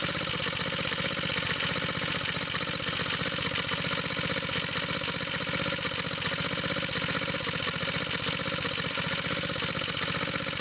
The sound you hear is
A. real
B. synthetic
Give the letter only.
A